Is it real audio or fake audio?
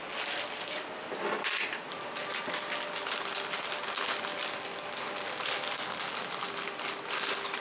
real